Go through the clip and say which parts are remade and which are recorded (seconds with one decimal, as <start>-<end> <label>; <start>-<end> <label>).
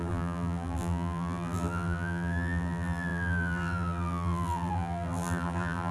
0.0-5.9 remade